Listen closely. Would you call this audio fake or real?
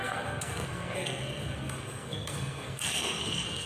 fake